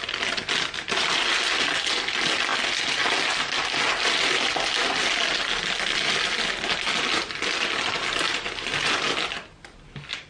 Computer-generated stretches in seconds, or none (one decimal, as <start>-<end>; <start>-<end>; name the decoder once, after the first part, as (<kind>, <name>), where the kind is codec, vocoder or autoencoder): none